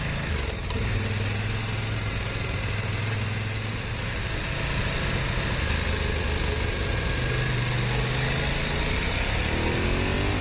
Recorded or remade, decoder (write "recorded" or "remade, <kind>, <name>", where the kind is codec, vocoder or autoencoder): recorded